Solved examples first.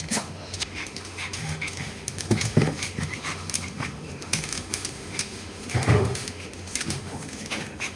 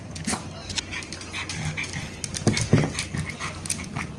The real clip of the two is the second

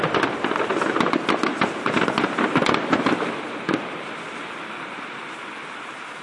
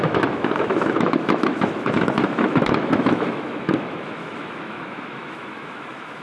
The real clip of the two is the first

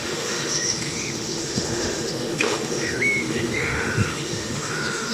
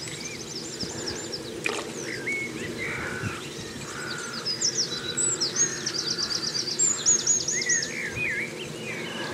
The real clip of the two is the second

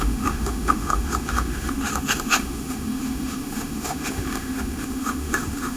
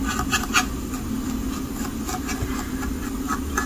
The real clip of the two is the second